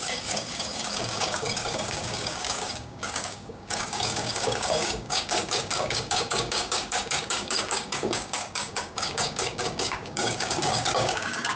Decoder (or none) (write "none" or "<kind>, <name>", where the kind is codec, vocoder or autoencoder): codec, DAC